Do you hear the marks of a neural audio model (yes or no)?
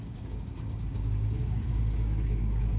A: yes